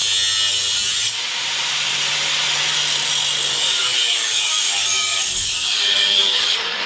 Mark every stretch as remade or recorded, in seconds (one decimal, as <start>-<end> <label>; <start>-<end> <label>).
0.0-3.5 recorded; 3.5-6.9 remade